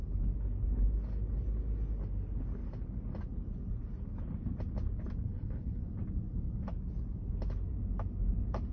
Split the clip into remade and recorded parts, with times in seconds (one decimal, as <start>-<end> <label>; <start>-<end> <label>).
0.0-5.3 recorded; 5.3-5.8 remade; 5.8-8.7 recorded